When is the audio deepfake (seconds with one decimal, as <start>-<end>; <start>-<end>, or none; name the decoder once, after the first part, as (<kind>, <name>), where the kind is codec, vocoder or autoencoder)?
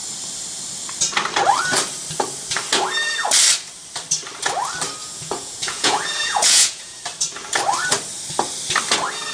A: 5.0-7.0 (vocoder, Vocos)